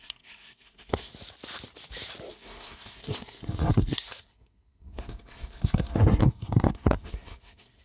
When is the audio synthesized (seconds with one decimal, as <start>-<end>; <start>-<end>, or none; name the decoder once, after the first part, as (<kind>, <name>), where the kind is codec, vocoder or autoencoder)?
0.0-1.1 (codec, SNAC); 2.3-7.8